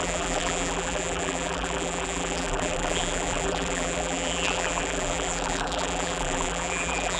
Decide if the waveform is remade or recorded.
remade